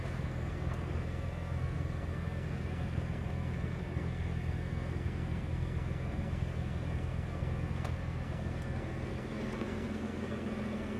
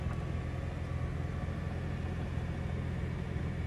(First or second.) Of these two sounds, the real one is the second